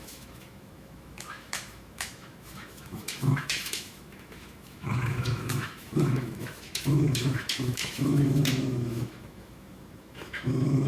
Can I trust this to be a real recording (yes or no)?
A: no